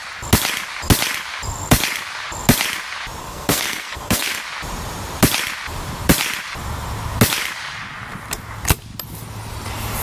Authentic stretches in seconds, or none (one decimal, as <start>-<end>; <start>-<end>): 0.0-3.2; 4.4-10.0